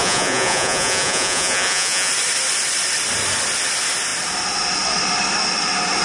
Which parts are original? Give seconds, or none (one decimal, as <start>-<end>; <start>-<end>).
2.1-6.0